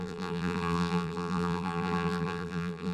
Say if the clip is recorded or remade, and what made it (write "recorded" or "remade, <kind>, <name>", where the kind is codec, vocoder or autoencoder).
remade, vocoder, BigVGAN v2